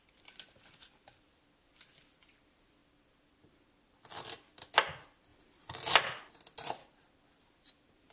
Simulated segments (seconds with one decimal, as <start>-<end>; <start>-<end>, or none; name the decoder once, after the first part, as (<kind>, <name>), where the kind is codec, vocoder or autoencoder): none